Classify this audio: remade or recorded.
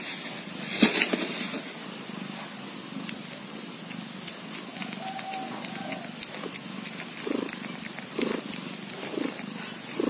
recorded